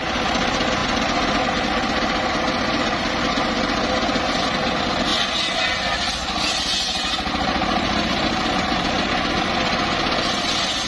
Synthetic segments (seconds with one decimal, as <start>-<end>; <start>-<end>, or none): none